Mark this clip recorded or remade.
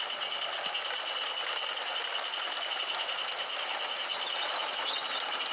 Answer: recorded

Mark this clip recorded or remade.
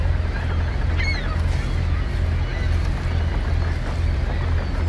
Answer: recorded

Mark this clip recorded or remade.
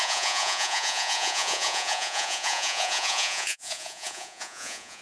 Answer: remade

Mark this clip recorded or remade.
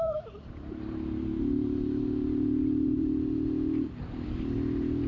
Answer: recorded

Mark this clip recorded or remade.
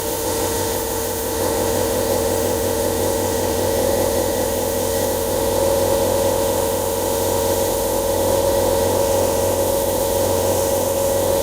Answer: remade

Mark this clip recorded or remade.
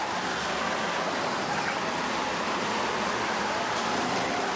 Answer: recorded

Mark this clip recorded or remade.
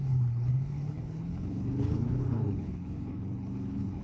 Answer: remade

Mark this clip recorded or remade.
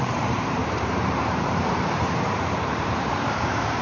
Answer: remade